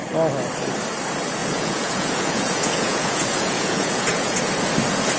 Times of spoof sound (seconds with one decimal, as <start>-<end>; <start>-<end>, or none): 1.4-4.5